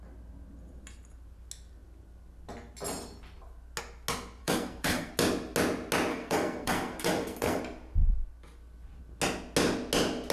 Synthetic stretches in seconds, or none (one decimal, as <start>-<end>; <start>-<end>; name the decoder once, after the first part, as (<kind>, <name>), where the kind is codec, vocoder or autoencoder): 4.4-5.1 (codec, SNAC); 6.1-7.6